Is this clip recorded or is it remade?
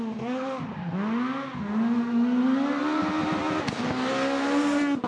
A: recorded